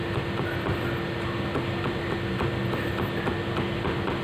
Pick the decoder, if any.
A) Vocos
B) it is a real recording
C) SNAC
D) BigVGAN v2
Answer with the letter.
B